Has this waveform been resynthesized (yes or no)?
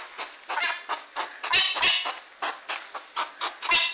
no